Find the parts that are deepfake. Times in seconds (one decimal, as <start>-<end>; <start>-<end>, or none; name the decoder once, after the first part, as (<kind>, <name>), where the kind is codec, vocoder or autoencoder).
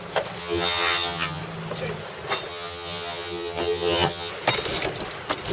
0.4-1.4 (vocoder, HiFi-GAN); 2.5-4.3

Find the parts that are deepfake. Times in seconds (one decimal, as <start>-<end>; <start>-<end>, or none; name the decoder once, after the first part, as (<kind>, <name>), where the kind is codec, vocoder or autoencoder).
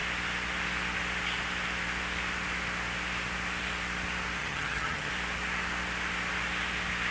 4.4-5.1 (vocoder, HiFi-GAN)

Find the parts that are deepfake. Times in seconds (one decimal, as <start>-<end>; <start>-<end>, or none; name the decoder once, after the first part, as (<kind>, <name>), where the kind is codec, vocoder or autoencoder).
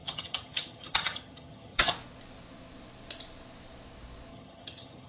0.0-1.9 (vocoder, HiFi-GAN); 4.3-5.1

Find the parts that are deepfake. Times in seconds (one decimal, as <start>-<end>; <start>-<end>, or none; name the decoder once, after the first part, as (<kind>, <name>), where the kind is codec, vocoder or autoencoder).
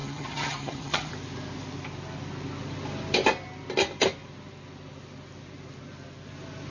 0.0-1.1 (vocoder, HiFi-GAN)